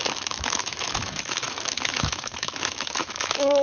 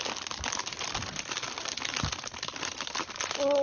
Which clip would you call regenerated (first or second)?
first